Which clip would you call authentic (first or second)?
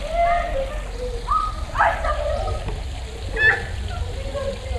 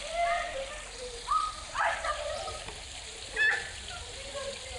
first